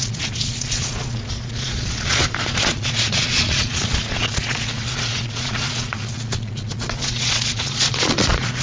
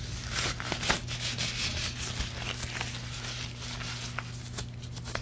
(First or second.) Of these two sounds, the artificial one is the first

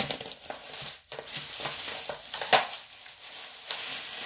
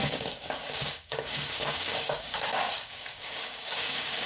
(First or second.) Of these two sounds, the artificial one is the second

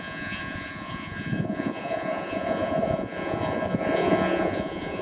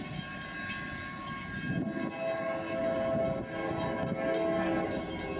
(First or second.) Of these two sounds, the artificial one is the first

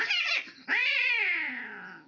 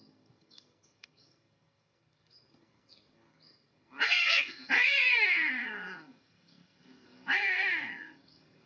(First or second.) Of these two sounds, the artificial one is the second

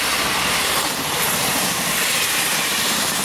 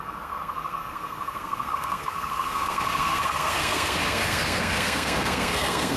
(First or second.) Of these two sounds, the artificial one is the second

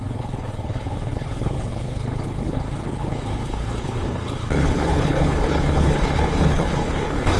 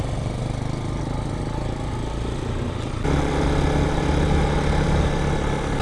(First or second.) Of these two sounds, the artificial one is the first